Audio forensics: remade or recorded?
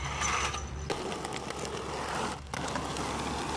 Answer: recorded